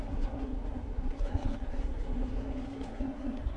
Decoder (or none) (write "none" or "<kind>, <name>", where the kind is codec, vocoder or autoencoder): codec, SNAC